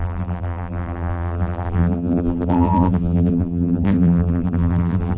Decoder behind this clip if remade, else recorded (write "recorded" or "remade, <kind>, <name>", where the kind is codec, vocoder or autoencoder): remade, vocoder, BigVGAN v2